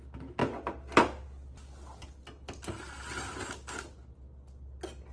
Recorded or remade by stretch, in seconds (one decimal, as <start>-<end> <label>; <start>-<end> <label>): 0.0-5.1 recorded